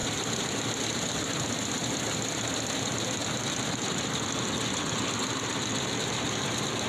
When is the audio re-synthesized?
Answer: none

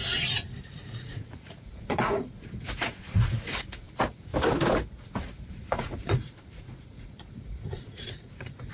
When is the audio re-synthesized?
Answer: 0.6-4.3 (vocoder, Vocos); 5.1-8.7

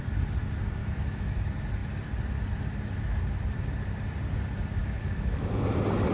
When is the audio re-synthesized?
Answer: 0.8-1.4 (autoencoder, DAC-VAE); 4.8-5.5